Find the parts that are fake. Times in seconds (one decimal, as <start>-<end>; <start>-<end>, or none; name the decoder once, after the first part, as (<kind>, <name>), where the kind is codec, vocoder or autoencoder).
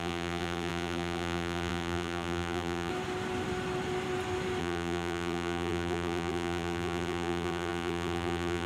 0.0-2.9 (vocoder, BigVGAN v2); 4.6-8.7